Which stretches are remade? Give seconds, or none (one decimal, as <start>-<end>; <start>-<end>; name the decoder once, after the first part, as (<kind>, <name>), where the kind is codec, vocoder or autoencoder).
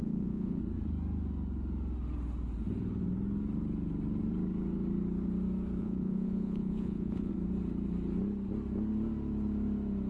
0.0-0.6 (vocoder, Vocos); 5.8-7.3